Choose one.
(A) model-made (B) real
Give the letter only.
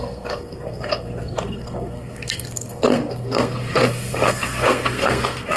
A